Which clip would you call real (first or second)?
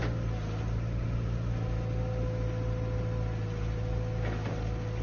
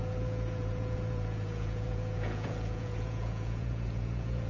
first